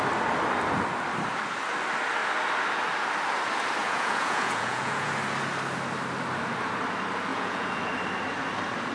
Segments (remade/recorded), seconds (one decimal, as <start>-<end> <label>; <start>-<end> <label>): 0.0-3.8 recorded; 3.8-5.1 remade; 5.1-7.3 recorded; 7.3-7.8 remade; 7.8-8.9 recorded